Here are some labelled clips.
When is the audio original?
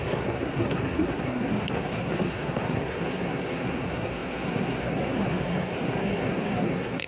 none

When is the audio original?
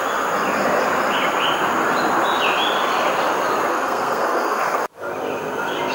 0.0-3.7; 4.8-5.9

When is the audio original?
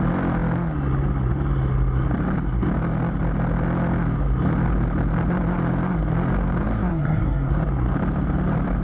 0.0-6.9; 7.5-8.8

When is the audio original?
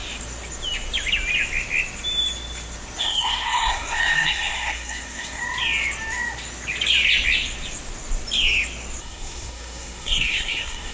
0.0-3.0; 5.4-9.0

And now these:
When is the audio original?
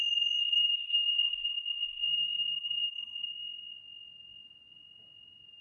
0.0-0.4; 3.3-5.6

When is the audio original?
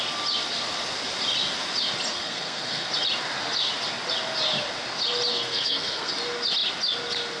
0.0-2.1; 2.9-5.3; 6.1-7.4